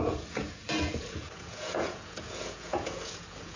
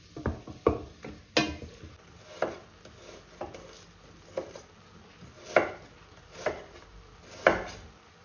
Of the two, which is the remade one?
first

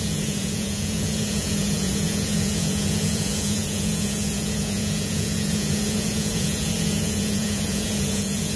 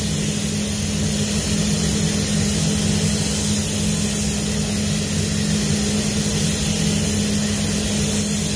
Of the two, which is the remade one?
first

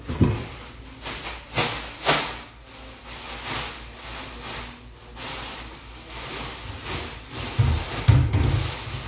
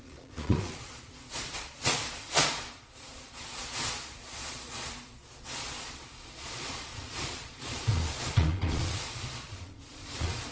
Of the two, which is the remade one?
second